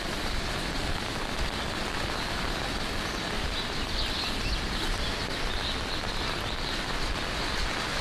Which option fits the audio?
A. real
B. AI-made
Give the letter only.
A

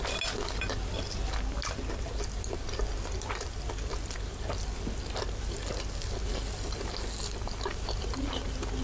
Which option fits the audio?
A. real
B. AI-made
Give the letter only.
A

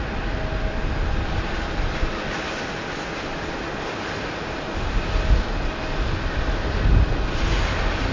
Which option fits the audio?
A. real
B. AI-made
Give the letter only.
A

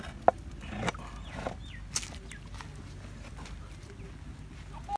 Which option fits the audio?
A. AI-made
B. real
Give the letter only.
B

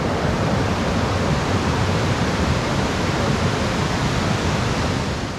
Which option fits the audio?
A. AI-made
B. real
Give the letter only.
B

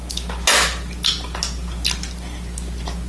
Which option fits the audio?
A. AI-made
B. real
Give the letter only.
B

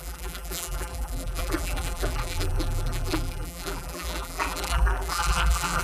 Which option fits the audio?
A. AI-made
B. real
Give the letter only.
A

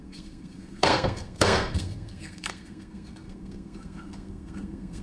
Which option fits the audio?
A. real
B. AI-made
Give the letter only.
B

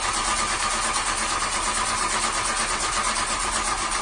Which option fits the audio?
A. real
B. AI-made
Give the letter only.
A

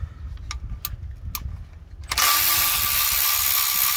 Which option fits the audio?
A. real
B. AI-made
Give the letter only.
A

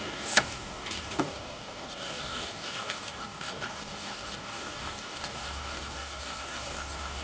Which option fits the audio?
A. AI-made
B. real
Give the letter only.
A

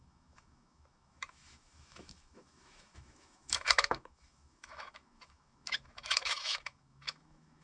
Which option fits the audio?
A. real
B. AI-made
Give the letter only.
B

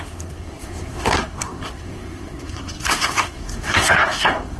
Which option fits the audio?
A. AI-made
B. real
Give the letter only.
A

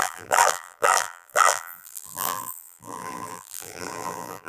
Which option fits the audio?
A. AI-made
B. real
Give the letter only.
A